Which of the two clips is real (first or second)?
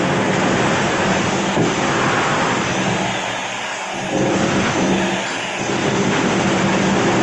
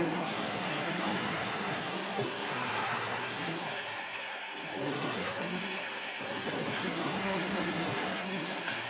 first